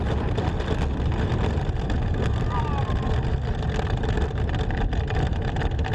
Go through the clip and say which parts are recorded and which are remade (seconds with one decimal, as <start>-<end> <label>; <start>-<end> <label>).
0.0-5.9 recorded